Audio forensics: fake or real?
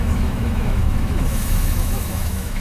fake